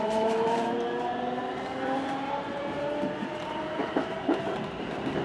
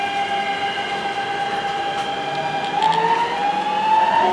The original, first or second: second